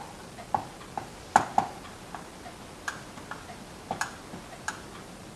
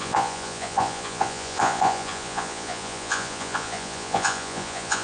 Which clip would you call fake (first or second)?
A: second